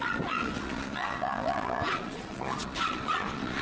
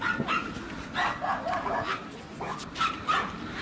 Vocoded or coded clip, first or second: first